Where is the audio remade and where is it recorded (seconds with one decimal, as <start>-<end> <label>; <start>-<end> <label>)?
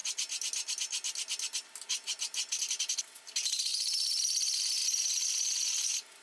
0.0-6.2 recorded